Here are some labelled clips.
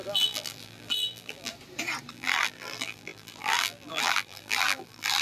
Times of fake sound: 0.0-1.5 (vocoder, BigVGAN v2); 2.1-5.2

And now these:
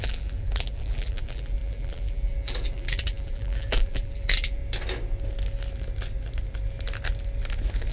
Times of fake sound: 0.0-4.6 (vocoder, BigVGAN v2)

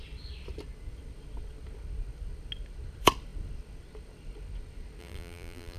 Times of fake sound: 5.0-5.8 (vocoder, BigVGAN v2)

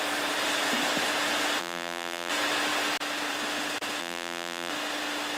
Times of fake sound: 1.6-2.3 (vocoder, BigVGAN v2); 4.0-4.7

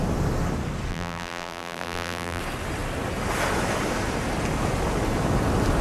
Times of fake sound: 0.9-2.4 (vocoder, BigVGAN v2)

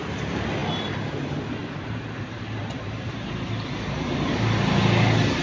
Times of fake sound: 1.6-4.6 (vocoder, BigVGAN v2)